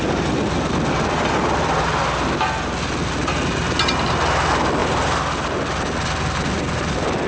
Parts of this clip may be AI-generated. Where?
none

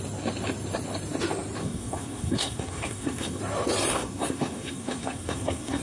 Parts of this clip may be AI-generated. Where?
1.6-3.4 (codec, SNAC); 3.9-5.8

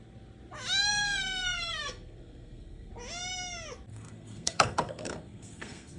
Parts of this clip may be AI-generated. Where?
0.9-2.9 (codec, SNAC); 3.9-6.0

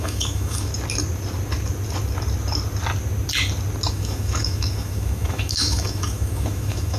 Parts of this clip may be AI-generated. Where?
0.0-0.7 (autoencoder, DAC-VAE); 3.9-7.0

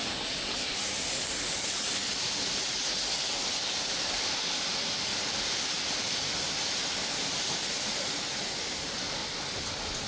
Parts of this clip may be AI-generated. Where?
7.1-8.0 (vocoder, BigVGAN v2); 9.2-9.7

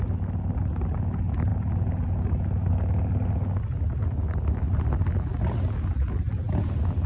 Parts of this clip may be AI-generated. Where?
none

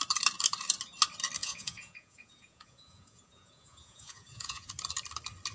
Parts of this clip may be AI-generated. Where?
1.4-4.7 (vocoder, Vocos)

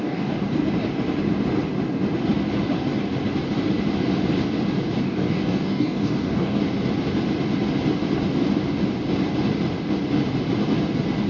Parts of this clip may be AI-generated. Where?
0.0-0.6 (codec, DAC); 5.0-6.6